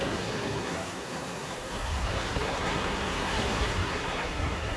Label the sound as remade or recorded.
remade